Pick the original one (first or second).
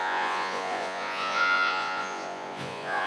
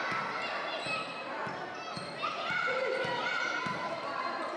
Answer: second